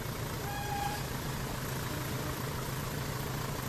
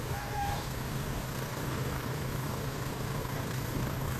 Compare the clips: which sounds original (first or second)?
first